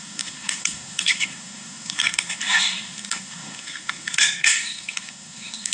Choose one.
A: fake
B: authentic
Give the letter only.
A